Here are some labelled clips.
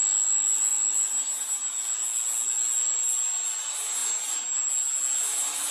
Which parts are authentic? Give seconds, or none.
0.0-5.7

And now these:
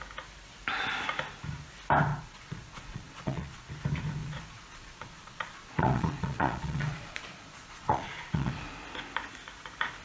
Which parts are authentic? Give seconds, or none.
0.0-2.1; 3.7-4.2; 8.5-10.0

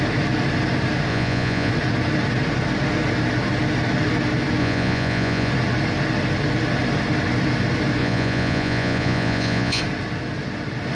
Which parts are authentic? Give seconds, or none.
0.0-1.1; 1.7-4.6; 5.5-8.0; 9.8-10.9

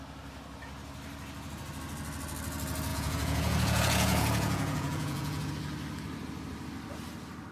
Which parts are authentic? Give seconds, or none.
0.0-2.9; 5.5-7.5

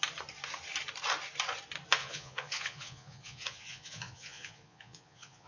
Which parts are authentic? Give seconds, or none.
0.0-2.0

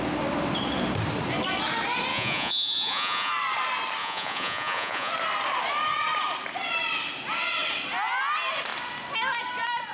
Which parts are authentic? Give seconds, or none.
0.0-2.1; 3.3-4.0; 5.1-9.9

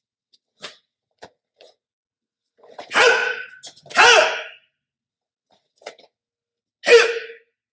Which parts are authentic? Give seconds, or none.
3.2-5.1; 6.6-7.7

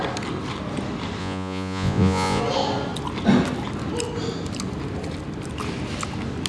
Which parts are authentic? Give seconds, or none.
0.0-1.2; 2.4-6.5